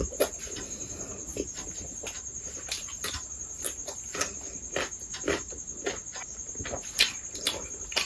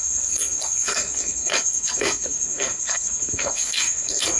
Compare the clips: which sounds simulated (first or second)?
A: second